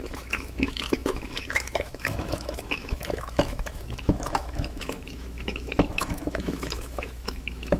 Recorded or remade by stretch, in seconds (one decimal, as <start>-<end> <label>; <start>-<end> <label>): 0.0-7.8 remade